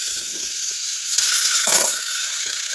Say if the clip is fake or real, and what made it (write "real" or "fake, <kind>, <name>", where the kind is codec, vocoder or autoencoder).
fake, codec, SNAC